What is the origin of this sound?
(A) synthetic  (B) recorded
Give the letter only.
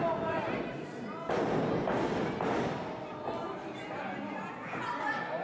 B